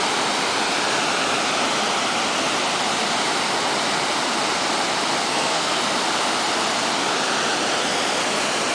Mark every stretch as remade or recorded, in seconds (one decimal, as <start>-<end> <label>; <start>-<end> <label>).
0.0-5.3 recorded; 5.3-5.8 remade; 5.8-8.7 recorded